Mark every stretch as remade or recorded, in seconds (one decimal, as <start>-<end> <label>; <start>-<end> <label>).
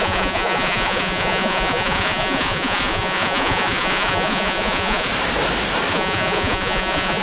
0.0-5.1 remade; 5.1-5.9 recorded; 5.9-7.2 remade